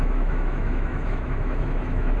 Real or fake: fake